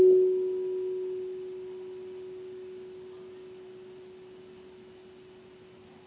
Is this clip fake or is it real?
real